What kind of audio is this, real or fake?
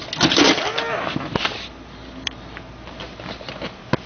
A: real